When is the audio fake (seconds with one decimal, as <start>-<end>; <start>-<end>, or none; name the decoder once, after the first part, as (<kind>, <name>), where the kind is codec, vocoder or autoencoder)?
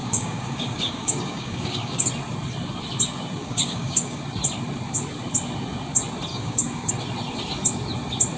0.0-2.1 (codec, DAC); 3.4-4.2; 6.3-6.9